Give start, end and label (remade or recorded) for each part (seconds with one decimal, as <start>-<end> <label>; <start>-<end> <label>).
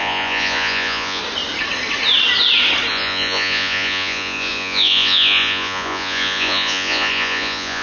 0.0-1.2 remade; 1.2-2.9 recorded; 2.9-7.8 remade